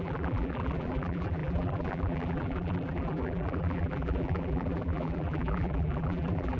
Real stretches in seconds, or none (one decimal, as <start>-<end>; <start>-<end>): none